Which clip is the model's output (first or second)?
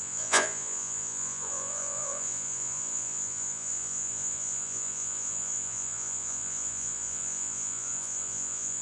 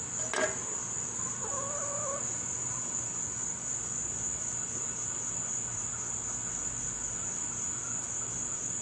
first